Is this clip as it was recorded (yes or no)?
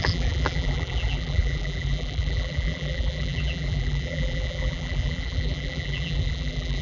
no